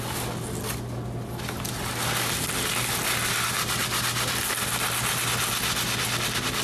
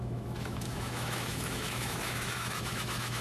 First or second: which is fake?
second